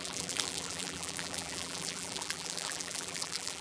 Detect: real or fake fake